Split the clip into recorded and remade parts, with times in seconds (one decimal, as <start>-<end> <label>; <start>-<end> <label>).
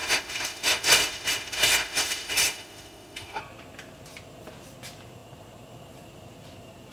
0.0-3.4 remade; 3.4-6.9 recorded